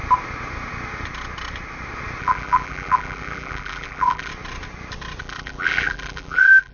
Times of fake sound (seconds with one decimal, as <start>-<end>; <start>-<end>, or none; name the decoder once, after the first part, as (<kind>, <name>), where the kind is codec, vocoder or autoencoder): 2.2-4.3 (vocoder, BigVGAN v2); 5.2-6.7